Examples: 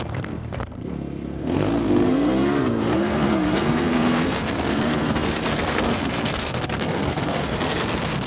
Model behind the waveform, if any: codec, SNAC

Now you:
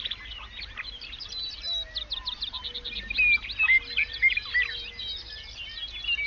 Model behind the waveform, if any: none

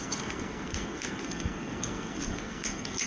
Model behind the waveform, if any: codec, SNAC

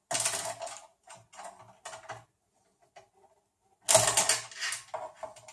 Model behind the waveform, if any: none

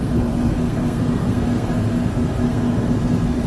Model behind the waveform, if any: codec, SNAC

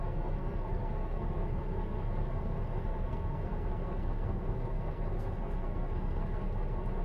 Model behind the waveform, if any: codec, SNAC